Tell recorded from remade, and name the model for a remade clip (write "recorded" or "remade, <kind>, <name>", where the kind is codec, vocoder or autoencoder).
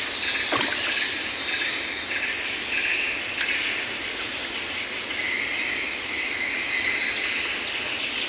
recorded